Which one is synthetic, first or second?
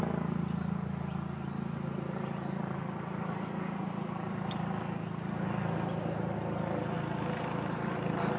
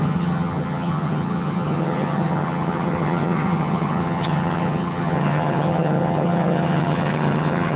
second